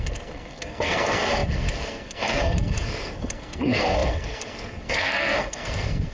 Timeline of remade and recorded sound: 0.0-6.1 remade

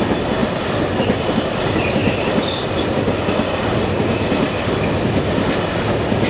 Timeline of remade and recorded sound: 0.0-6.3 recorded

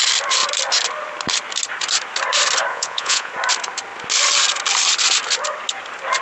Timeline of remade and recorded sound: 0.0-2.7 recorded; 2.7-3.3 remade; 3.3-6.2 recorded

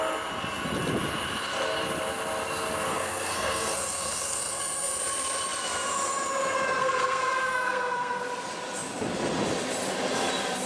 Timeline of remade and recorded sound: 0.0-2.9 recorded; 2.9-5.0 remade; 5.0-6.8 recorded; 6.8-8.2 remade; 8.2-10.7 recorded

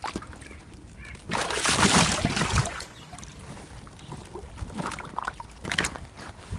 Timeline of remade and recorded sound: 0.0-2.6 recorded; 2.6-3.1 remade; 3.1-6.6 recorded

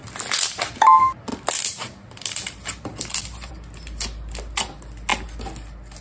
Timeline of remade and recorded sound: 0.0-6.0 recorded